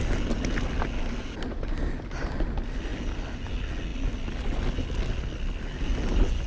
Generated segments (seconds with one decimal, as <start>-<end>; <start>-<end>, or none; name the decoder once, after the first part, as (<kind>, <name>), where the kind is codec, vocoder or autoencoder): none